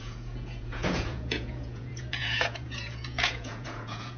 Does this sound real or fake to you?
fake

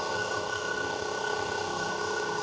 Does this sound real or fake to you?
fake